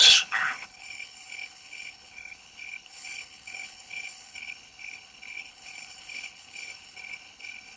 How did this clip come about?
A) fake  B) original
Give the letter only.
A